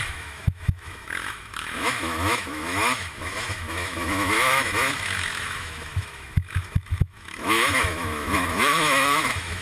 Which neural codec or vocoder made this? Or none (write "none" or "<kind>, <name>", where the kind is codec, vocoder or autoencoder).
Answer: autoencoder, DAC-VAE